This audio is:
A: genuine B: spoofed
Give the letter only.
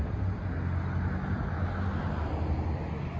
A